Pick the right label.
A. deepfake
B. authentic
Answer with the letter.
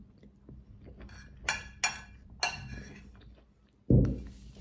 B